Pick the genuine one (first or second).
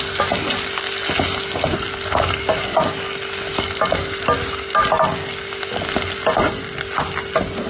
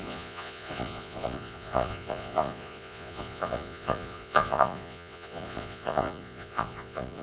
first